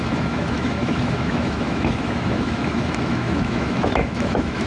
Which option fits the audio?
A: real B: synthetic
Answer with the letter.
B